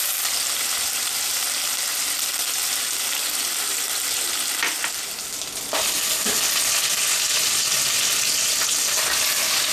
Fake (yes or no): no